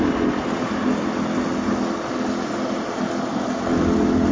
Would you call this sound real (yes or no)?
yes